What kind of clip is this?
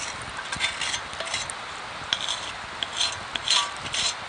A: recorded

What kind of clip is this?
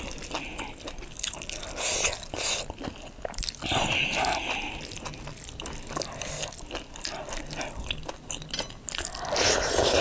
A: recorded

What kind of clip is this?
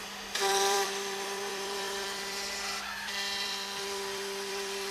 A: remade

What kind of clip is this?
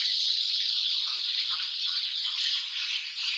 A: remade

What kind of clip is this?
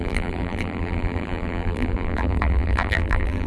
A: remade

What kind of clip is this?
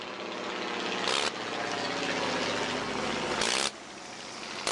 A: recorded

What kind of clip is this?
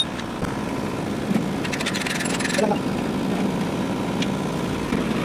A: recorded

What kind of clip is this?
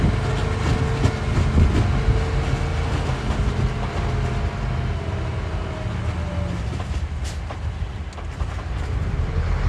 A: recorded